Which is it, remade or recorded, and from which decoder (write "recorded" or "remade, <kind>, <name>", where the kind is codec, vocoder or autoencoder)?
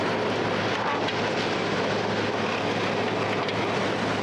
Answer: recorded